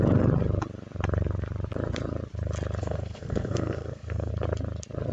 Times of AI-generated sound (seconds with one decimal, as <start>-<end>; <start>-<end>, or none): 2.8-4.3